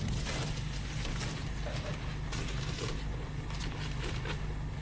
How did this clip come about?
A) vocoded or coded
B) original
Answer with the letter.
B